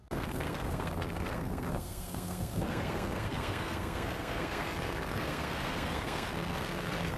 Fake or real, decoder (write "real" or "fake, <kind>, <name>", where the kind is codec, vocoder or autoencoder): fake, codec, SNAC